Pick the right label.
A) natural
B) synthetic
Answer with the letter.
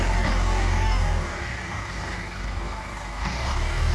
B